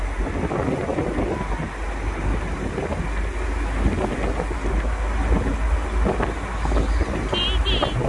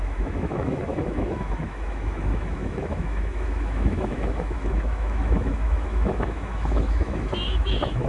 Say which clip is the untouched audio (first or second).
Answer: first